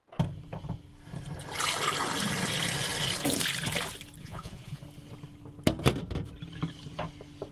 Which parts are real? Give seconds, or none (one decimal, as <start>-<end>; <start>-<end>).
0.0-4.2; 4.8-7.5